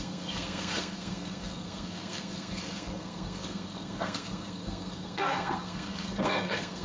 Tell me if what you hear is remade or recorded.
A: remade